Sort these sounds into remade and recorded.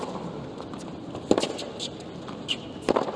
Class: recorded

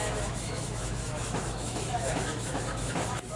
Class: remade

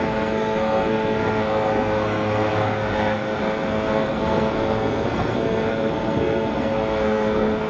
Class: remade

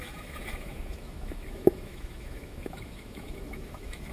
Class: remade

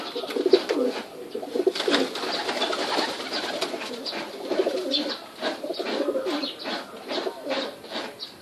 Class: remade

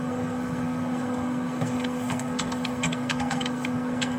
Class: remade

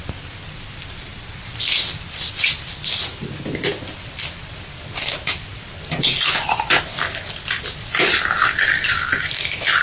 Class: recorded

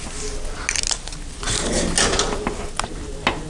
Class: recorded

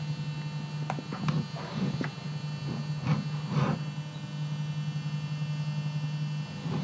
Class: recorded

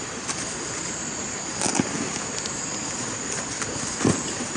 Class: recorded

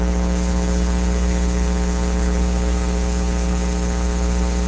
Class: remade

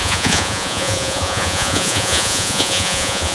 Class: remade